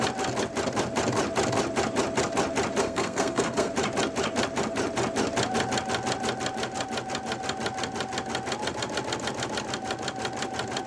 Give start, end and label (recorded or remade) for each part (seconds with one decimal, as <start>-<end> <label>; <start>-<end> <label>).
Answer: 0.0-2.8 recorded; 2.8-3.7 remade; 3.7-10.9 recorded